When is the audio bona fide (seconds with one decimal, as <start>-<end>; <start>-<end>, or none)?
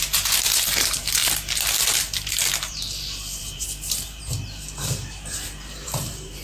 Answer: 1.2-2.7